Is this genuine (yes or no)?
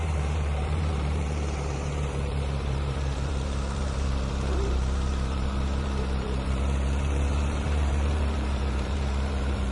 no